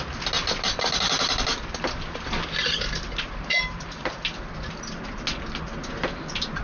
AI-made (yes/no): no